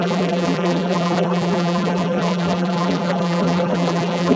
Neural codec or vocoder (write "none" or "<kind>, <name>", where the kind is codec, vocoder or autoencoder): vocoder, BigVGAN v2